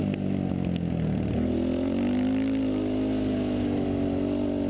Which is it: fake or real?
real